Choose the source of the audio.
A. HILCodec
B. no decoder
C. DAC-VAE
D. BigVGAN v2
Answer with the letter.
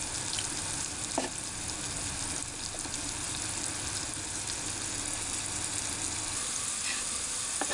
B